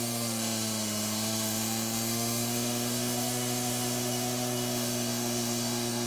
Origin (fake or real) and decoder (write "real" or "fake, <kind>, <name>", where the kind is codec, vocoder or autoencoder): fake, autoencoder, DAC-VAE